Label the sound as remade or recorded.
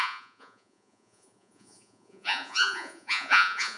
remade